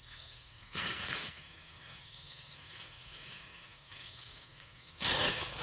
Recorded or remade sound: remade